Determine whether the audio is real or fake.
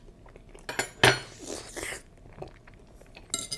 real